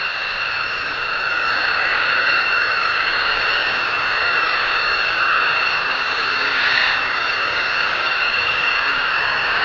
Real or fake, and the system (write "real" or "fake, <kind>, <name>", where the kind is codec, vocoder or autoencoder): fake, codec, DAC